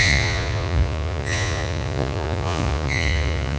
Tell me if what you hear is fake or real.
fake